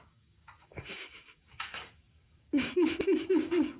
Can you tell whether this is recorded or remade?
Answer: remade